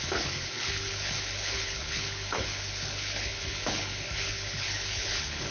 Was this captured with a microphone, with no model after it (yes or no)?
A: no